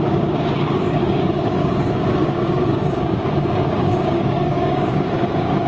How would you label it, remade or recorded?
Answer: remade